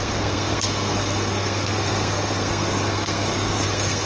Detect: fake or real fake